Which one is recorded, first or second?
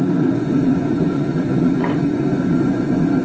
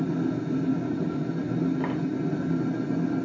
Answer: second